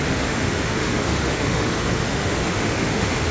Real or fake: fake